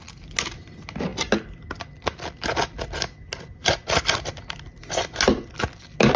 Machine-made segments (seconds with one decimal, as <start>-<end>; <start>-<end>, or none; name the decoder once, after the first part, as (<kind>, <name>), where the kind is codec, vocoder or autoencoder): none